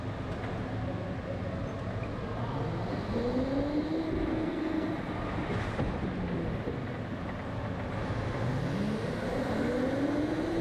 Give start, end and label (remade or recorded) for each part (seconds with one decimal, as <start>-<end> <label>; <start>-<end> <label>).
0.0-4.3 recorded; 4.3-4.9 remade; 4.9-10.6 recorded